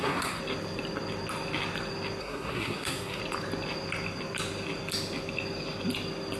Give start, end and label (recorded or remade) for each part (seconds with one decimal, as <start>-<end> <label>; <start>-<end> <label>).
0.0-0.4 remade; 0.4-2.2 recorded; 2.2-3.2 remade; 3.2-6.4 recorded